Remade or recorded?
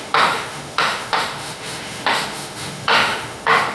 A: remade